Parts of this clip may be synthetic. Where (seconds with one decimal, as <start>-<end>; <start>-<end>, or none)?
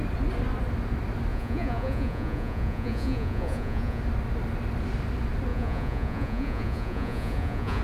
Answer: 1.3-4.0; 5.5-7.8